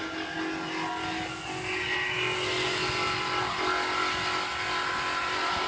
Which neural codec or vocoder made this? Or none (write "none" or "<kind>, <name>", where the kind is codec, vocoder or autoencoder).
none